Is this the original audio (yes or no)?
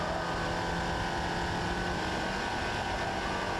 yes